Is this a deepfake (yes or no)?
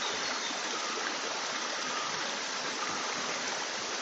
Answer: yes